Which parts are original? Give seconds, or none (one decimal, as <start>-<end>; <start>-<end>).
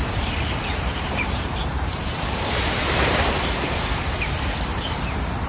3.3-4.7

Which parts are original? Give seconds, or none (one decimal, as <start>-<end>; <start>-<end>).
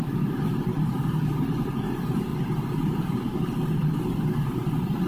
0.0-0.7; 1.3-5.1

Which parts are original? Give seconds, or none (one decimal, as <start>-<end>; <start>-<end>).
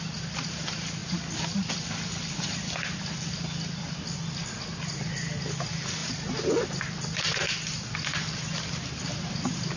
0.0-1.0; 4.6-6.0; 8.9-9.8